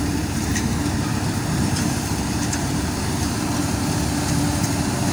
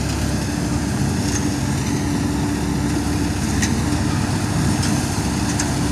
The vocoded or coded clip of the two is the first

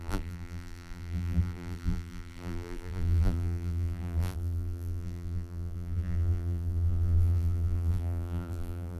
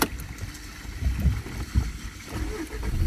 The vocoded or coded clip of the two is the first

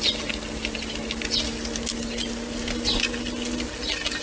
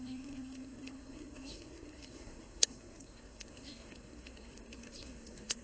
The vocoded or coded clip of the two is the second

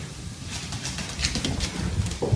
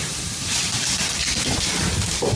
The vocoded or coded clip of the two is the second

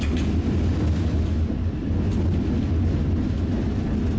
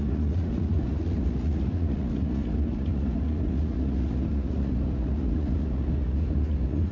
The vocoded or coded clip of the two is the second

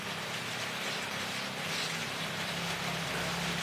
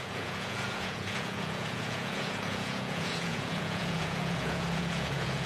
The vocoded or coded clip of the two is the second